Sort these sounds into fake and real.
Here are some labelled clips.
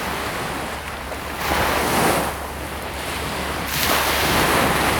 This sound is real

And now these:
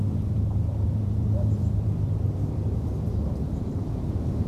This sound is fake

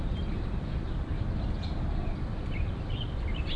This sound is fake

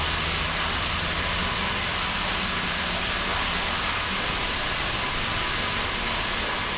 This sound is real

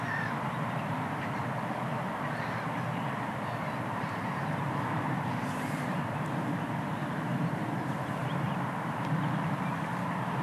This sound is fake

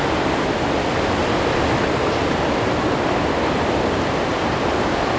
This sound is real